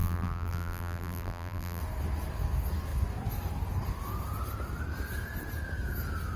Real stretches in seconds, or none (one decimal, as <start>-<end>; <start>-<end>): 1.8-6.4